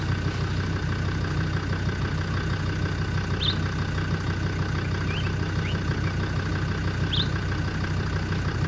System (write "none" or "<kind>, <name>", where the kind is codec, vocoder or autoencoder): none